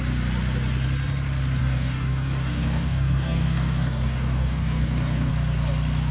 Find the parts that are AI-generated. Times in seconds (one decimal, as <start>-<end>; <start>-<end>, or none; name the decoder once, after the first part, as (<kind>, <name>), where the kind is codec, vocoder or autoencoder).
1.6-5.3 (codec, DAC)